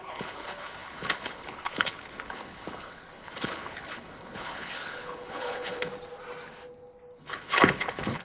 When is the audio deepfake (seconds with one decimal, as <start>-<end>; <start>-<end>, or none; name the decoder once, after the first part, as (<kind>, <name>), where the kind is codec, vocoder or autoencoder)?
0.0-5.9 (codec, HILCodec); 7.2-8.2